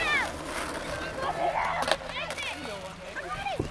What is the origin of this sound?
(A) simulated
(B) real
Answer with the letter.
B